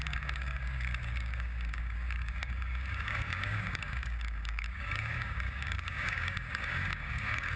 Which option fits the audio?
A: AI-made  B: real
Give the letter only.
A